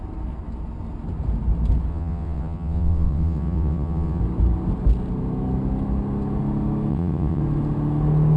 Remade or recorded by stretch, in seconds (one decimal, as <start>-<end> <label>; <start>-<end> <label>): 0.0-1.9 recorded; 1.9-4.2 remade; 4.2-6.9 recorded; 6.9-7.4 remade; 7.4-8.4 recorded